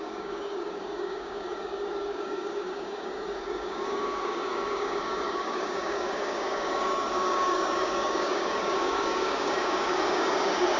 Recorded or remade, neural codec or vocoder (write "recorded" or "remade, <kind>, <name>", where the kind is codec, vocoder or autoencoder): remade, codec, DAC